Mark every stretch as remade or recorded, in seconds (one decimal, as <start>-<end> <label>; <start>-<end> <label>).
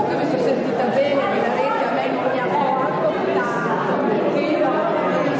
0.0-5.4 recorded